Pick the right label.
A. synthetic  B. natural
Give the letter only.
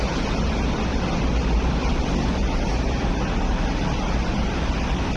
B